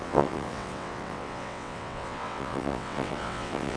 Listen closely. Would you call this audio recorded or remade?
remade